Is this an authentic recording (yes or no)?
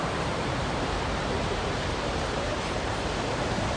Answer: no